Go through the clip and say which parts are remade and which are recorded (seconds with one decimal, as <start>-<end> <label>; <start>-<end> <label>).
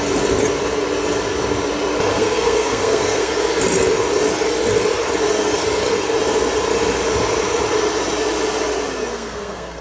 0.0-2.1 recorded; 2.1-3.3 remade; 3.3-9.1 recorded; 9.1-9.8 remade